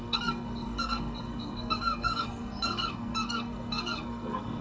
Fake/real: fake